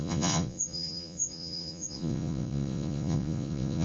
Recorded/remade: remade